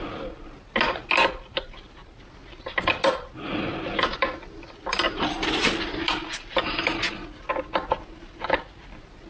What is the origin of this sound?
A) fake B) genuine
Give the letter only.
B